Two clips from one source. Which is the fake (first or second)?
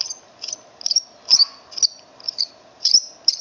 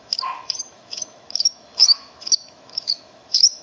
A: second